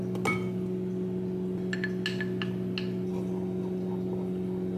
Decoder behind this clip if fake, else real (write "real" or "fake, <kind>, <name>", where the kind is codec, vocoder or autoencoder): real